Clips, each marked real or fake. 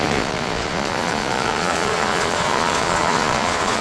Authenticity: fake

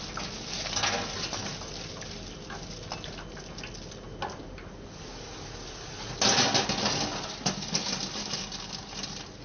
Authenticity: real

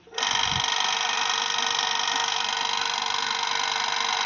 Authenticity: real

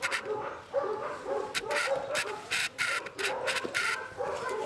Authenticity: real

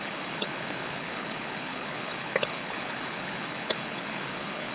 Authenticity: fake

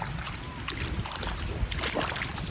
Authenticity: real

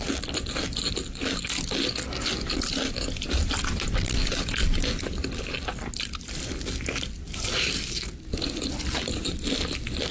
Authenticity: real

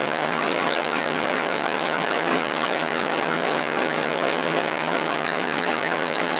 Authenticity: fake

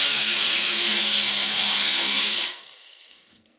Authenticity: fake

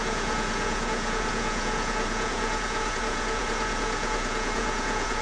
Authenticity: fake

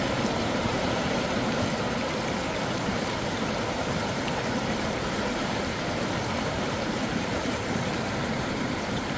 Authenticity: fake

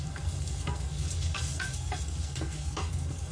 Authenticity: fake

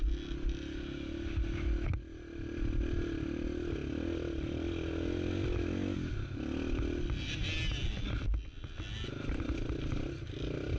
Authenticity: real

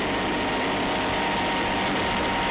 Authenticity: real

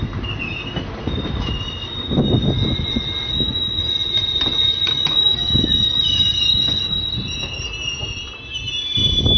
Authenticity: real